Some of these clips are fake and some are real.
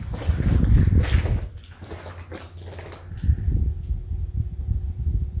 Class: real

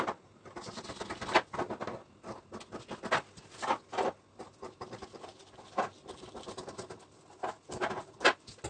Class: real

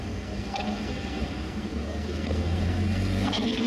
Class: fake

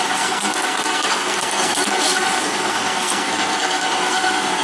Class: fake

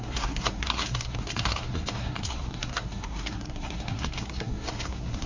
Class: fake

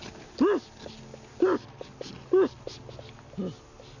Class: real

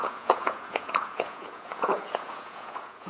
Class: fake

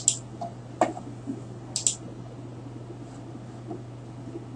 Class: real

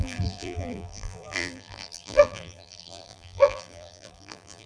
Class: fake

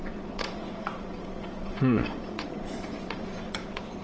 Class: fake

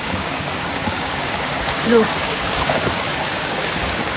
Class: fake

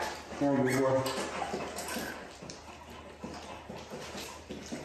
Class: real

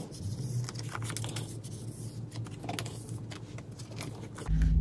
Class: real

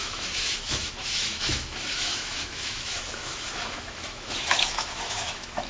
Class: fake